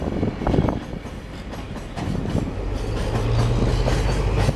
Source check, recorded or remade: recorded